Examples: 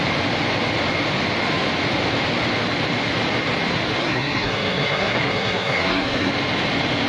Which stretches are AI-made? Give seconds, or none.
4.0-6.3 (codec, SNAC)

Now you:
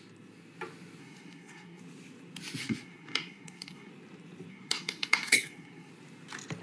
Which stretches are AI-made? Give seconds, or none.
1.0-1.8 (codec, SNAC); 2.6-3.9; 4.5-5.9

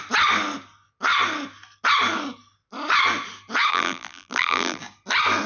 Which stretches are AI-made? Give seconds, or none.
3.7-4.8 (vocoder, BigVGAN v2)

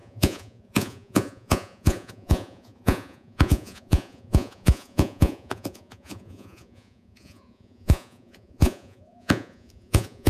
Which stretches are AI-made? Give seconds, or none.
0.0-10.3 (vocoder, Vocos)